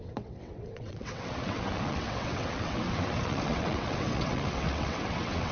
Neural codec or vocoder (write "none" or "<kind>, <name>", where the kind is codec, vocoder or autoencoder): vocoder, WaveNeXt